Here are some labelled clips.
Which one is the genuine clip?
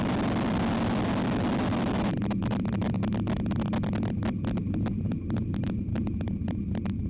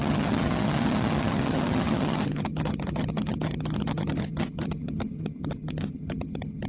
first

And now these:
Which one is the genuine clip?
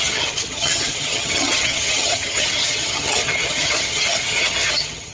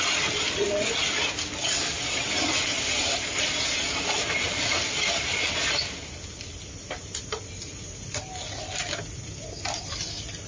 second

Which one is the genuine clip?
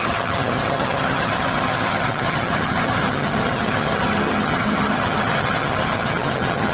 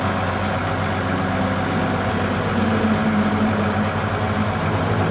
second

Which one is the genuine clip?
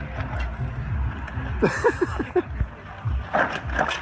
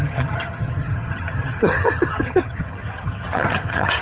first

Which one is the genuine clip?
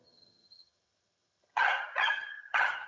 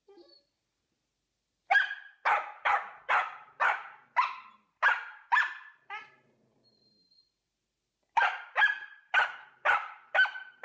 second